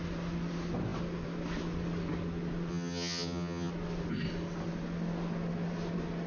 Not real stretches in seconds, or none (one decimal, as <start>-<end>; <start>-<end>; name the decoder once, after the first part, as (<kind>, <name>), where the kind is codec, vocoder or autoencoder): 2.7-3.7 (vocoder, HiFi-GAN)